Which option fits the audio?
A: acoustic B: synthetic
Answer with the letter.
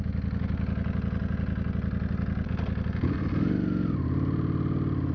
A